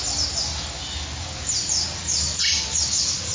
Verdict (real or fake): real